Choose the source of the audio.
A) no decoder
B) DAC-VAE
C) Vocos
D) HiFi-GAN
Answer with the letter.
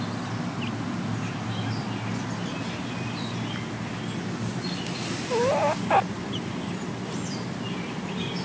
A